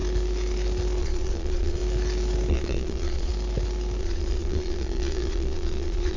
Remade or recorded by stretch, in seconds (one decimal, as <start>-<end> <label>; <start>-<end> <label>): 0.0-1.0 recorded; 1.0-1.8 remade; 1.8-2.5 recorded; 2.5-3.3 remade; 3.3-4.0 recorded; 4.0-6.2 remade